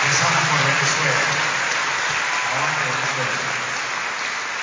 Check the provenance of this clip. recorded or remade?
recorded